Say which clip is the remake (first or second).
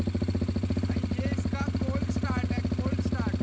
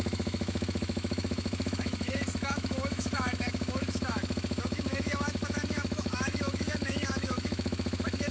second